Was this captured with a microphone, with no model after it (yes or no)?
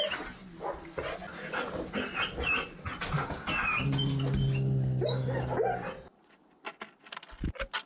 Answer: yes